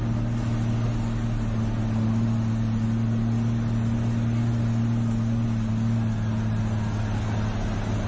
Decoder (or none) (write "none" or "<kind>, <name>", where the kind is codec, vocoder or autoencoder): none